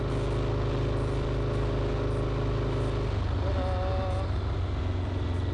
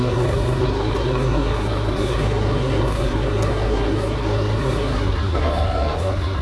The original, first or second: first